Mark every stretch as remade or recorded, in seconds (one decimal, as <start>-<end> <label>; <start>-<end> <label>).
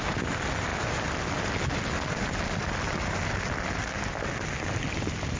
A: 0.0-5.4 recorded